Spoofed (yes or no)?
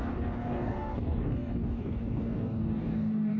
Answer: yes